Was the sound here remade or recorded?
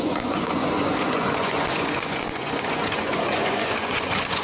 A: remade